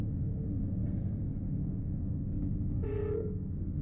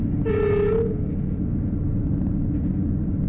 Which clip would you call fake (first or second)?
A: first